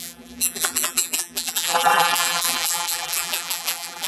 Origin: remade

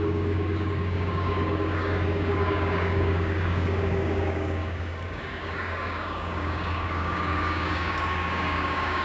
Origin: remade